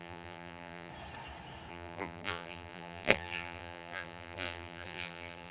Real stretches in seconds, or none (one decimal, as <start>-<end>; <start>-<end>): 0.9-1.7